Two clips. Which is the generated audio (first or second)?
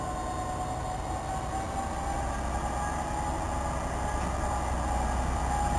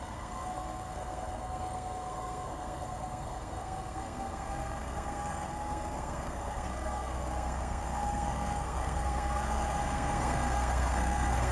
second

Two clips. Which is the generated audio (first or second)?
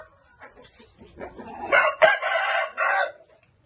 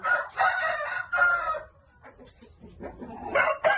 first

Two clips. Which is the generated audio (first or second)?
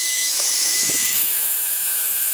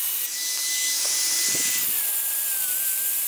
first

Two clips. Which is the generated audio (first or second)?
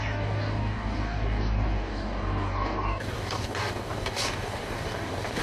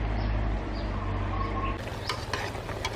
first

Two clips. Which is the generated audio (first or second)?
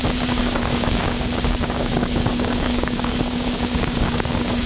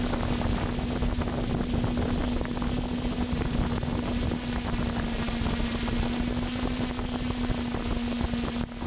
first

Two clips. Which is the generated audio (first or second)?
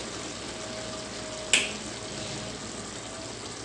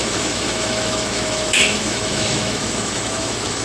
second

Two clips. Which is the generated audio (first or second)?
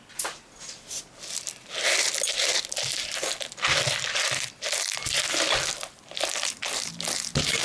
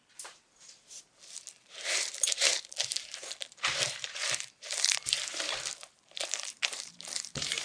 second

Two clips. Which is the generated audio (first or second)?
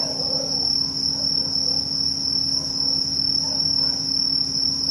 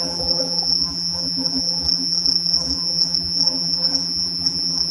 second